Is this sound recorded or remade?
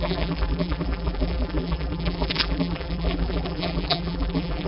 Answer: remade